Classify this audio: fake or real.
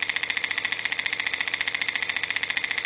real